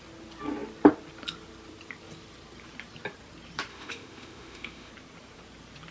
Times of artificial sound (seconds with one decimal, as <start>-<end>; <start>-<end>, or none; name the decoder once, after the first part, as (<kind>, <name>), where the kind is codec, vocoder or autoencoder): 3.7-4.9 (autoencoder, DAC-VAE)

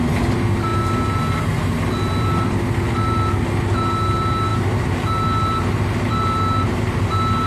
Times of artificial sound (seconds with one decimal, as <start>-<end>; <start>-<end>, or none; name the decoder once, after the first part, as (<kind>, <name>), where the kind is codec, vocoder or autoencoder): none

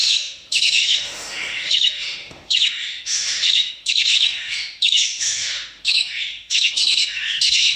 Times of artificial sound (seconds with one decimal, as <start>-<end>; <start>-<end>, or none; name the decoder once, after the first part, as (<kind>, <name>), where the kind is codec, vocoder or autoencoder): 0.0-7.8 (autoencoder, DAC-VAE)